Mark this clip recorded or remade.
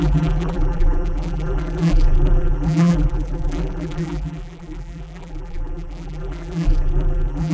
remade